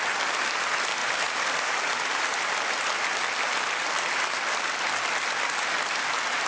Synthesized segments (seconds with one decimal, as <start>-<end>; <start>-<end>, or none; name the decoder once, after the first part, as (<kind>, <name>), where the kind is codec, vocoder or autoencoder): none